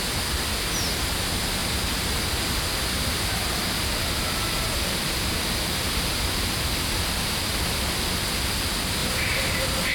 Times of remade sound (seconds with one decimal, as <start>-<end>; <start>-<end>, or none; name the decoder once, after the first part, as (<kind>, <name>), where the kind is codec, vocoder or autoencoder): 1.6-6.0 (vocoder, BigVGAN v2); 9.0-9.9